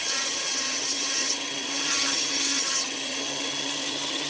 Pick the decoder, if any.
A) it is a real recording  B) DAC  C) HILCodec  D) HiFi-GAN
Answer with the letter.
D